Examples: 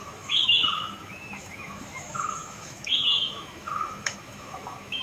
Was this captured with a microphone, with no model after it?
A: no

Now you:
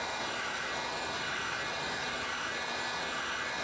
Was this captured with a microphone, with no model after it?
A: yes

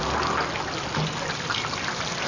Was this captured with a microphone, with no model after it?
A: yes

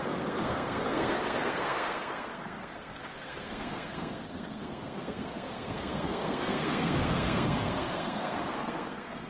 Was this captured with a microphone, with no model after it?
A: no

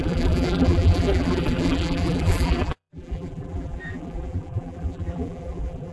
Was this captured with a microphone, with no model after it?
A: no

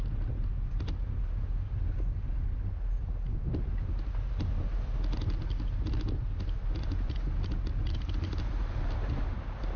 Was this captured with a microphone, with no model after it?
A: yes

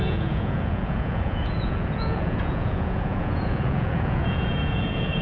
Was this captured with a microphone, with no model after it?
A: no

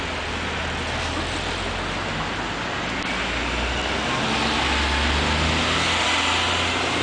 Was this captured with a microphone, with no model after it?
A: yes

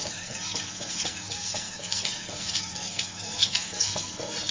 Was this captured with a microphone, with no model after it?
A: no